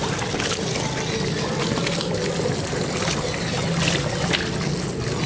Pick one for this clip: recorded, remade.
recorded